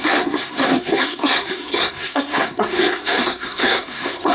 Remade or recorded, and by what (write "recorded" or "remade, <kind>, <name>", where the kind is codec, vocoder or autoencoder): remade, codec, SNAC